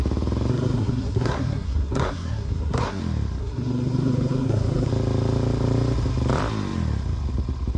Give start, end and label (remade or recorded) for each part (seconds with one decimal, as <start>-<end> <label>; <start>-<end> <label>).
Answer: 0.0-0.5 recorded; 0.5-3.0 remade; 3.0-3.4 recorded; 3.4-4.9 remade; 4.9-7.8 recorded